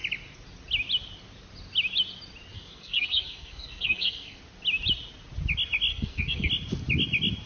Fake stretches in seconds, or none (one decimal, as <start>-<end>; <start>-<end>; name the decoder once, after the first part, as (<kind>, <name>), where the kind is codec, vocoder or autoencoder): 2.5-4.4 (codec, SNAC); 5.9-6.5